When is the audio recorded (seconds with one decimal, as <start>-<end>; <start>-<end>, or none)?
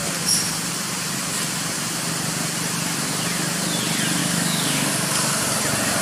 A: 0.0-4.2; 5.4-6.0